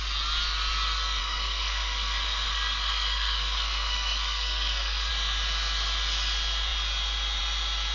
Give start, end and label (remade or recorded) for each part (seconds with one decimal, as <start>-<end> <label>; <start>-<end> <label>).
0.0-1.2 recorded; 1.2-5.1 remade; 5.1-7.9 recorded